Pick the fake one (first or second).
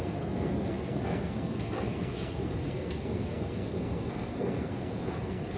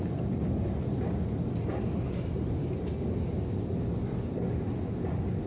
first